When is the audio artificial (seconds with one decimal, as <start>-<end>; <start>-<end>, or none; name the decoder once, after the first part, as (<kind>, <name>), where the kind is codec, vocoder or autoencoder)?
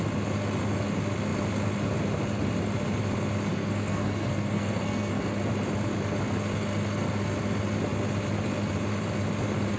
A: 3.5-5.2 (codec, SNAC)